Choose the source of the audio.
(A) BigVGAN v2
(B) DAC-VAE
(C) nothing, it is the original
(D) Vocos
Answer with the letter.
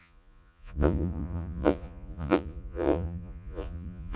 D